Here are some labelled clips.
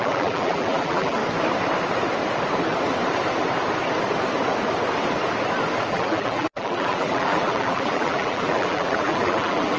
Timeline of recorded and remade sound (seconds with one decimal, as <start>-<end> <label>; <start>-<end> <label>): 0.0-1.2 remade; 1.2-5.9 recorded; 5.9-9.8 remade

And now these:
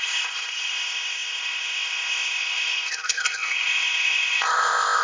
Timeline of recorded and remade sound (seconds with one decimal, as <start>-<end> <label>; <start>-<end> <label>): 0.0-5.0 remade

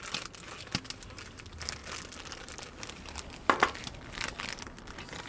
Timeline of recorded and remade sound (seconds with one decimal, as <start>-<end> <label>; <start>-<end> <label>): 0.0-5.3 recorded

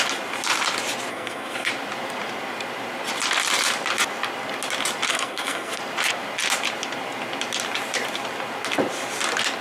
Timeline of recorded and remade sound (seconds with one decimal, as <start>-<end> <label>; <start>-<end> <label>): 0.0-1.1 recorded; 1.1-1.7 remade; 1.7-5.1 recorded; 5.1-5.8 remade; 5.8-9.6 recorded

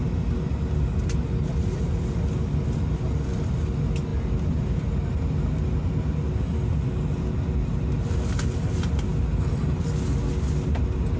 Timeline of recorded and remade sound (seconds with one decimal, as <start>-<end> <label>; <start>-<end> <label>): 0.0-11.2 recorded

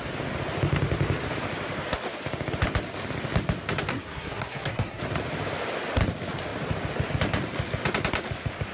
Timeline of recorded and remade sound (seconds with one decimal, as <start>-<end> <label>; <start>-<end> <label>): 0.0-3.9 recorded; 3.9-5.0 remade; 5.0-8.7 recorded

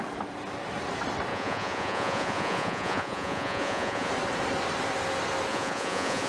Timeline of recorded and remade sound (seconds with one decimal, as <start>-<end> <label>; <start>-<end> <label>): 0.0-1.3 recorded; 1.3-4.1 remade; 4.1-5.5 recorded; 5.5-6.3 remade